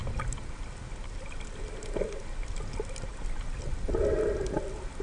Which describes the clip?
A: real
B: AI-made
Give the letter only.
A